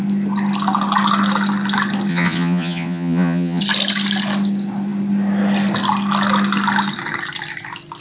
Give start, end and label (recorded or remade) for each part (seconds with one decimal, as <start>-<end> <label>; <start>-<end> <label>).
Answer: 0.0-2.1 recorded; 2.1-3.6 remade; 3.6-8.0 recorded